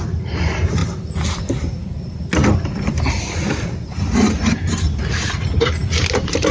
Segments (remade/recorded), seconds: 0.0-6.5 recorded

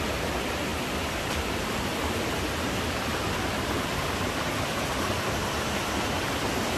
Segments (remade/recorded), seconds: 0.0-0.7 recorded; 0.7-4.8 remade; 4.8-6.8 recorded

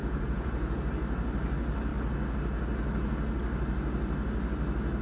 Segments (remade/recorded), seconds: 0.0-0.8 remade; 0.8-5.0 recorded